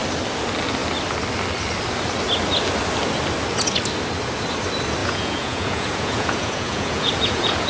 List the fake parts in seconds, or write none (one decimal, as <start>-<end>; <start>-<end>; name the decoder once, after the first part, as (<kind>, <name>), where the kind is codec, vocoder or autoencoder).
5.0-7.7 (vocoder, Vocos)